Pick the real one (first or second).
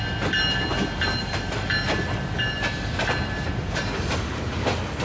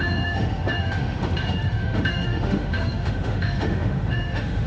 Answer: first